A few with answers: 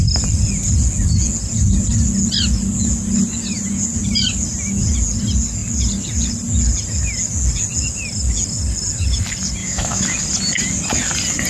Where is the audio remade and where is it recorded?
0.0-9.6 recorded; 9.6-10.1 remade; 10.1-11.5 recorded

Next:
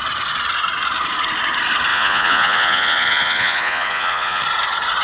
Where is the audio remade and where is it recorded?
0.0-1.9 recorded; 1.9-4.4 remade; 4.4-5.0 recorded

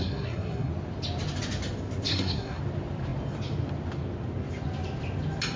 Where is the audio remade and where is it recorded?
0.0-0.7 remade; 0.7-2.1 recorded; 2.1-2.6 remade; 2.6-5.6 recorded